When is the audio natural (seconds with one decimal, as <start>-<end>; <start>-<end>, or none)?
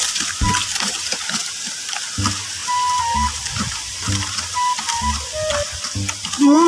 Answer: 0.0-0.7; 1.3-6.7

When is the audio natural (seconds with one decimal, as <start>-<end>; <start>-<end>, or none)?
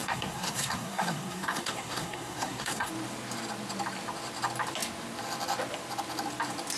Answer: 2.9-6.8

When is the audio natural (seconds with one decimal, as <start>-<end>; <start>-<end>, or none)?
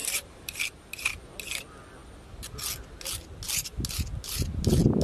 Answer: 0.6-5.0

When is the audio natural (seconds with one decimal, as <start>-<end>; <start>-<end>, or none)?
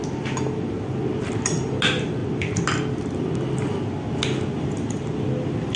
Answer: 0.0-5.8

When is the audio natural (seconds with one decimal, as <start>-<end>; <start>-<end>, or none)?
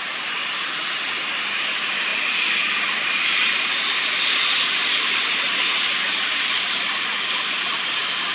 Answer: 0.0-8.3